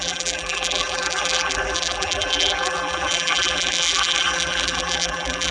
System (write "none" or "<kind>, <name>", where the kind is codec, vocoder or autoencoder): vocoder, BigVGAN v2